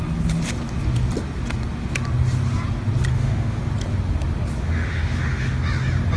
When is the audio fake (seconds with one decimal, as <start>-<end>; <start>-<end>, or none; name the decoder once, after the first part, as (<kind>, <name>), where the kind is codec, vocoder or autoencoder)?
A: 3.1-3.6 (autoencoder, DAC-VAE); 4.6-5.6